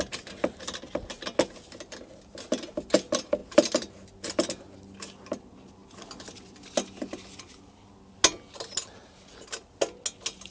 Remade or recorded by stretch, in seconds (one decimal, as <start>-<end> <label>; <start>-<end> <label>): 0.0-10.5 recorded